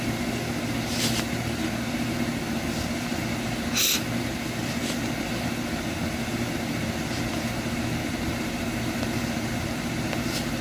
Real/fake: real